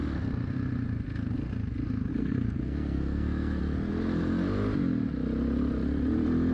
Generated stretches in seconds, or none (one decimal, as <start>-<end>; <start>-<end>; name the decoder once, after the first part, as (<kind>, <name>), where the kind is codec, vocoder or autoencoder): 2.1-3.6 (codec, SNAC)